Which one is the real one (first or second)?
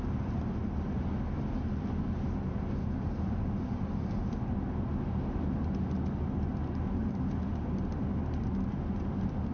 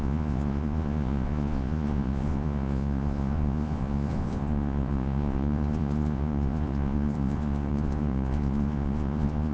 first